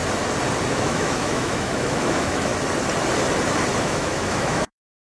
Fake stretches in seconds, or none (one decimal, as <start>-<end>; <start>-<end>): 0.7-2.5; 3.8-5.1